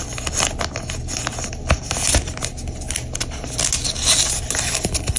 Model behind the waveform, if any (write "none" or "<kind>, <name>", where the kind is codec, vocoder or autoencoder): none